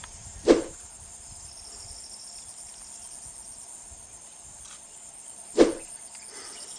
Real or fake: real